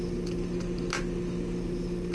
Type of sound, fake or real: real